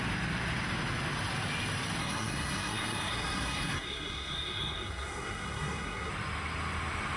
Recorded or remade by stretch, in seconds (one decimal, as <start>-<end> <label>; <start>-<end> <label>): 0.0-2.0 recorded; 2.0-6.1 remade; 6.1-7.2 recorded